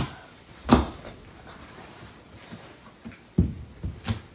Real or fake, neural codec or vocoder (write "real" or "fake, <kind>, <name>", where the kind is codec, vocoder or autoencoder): real